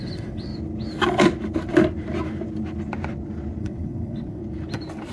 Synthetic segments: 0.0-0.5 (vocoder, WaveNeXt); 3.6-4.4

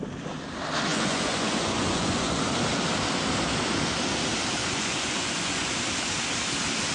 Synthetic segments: 0.9-2.4 (vocoder, Vocos); 4.6-5.7

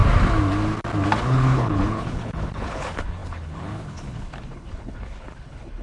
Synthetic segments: 1.2-5.8 (codec, HILCodec)